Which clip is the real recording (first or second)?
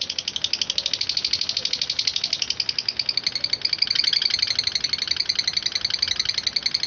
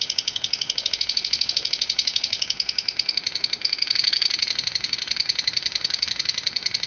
first